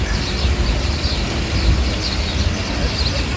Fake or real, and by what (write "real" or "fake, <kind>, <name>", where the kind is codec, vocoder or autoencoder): real